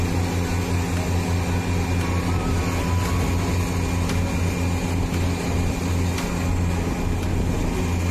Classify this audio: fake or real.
real